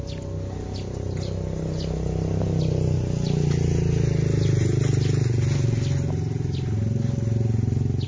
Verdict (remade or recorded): recorded